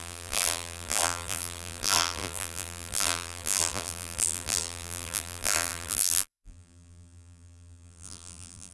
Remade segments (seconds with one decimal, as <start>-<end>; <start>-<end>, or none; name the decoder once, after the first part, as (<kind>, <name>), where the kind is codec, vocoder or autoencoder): 0.0-8.7 (vocoder, BigVGAN v2)